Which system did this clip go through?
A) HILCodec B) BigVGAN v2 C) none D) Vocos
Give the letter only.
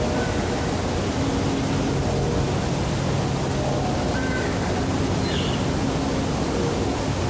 C